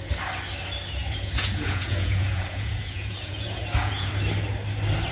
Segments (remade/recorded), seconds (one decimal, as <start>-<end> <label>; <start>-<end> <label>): 0.0-1.0 recorded; 1.0-4.1 remade; 4.1-5.1 recorded